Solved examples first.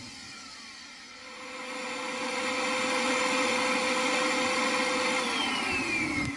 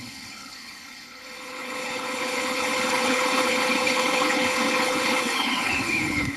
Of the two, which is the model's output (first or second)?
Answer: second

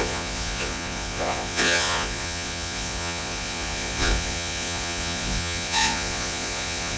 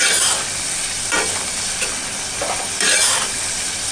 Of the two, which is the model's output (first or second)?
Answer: first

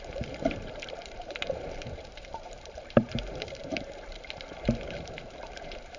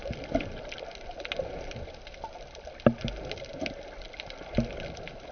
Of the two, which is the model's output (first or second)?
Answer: first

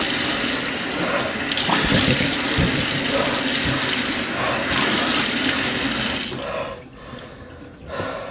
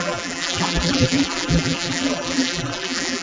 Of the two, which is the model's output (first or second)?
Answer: second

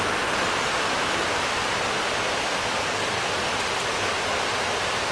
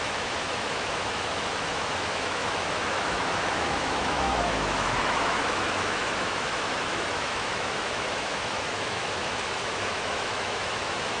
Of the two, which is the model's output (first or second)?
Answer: second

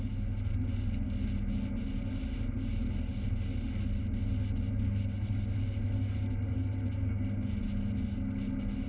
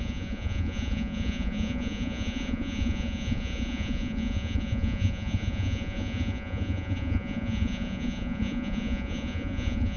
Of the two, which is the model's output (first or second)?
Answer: second